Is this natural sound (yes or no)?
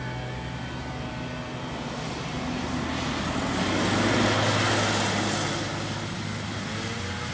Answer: yes